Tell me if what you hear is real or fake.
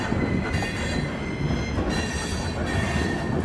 real